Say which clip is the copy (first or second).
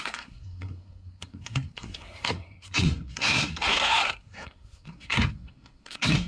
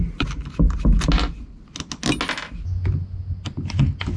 first